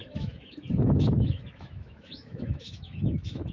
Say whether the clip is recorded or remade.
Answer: remade